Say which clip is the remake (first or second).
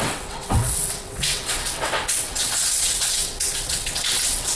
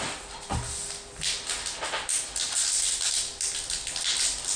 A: first